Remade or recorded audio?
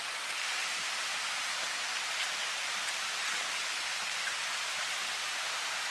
recorded